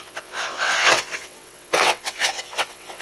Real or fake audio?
fake